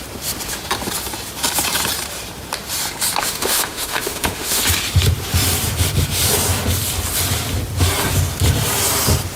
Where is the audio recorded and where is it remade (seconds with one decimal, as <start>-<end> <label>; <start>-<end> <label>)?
0.0-3.2 recorded; 3.2-4.6 remade; 4.6-9.4 recorded